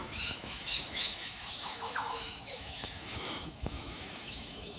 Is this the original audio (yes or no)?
no